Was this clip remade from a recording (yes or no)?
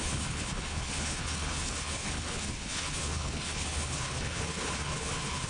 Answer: yes